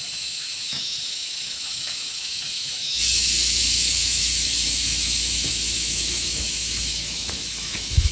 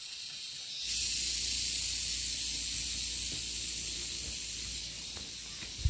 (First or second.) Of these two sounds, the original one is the second